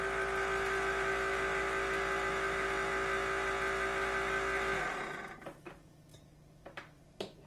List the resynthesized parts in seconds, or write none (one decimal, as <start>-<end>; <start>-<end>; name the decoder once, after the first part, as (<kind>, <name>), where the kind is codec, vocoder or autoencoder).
6.3-7.5 (vocoder, BigVGAN v2)